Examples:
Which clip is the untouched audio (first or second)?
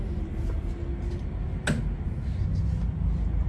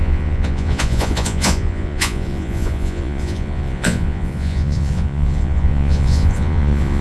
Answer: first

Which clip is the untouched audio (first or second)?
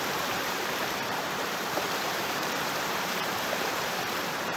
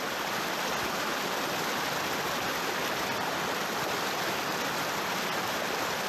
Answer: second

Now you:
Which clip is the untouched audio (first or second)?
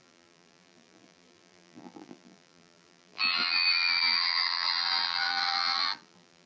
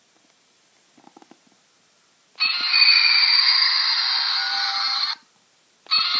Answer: second